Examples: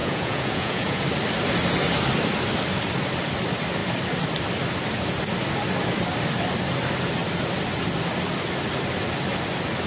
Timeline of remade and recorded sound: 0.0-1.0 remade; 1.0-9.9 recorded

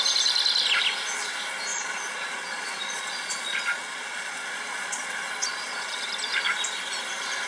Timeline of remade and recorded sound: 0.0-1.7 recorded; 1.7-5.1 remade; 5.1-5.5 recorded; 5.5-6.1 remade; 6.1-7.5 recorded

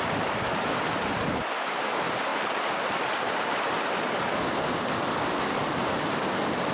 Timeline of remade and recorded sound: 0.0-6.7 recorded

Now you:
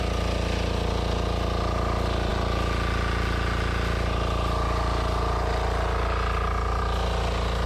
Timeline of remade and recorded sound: 0.0-7.7 recorded

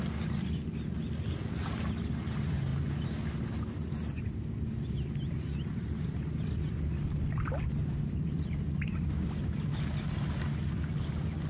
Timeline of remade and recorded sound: 0.0-11.5 recorded

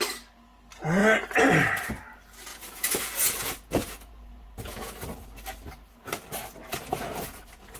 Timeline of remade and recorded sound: 0.0-2.5 recorded; 2.5-5.0 remade; 5.0-6.7 recorded; 6.7-7.8 remade